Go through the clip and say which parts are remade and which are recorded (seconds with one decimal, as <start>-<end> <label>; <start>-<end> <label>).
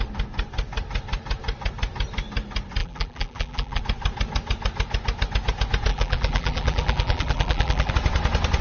0.0-2.8 recorded; 2.8-3.8 remade; 3.8-5.9 recorded; 5.9-7.9 remade; 7.9-8.6 recorded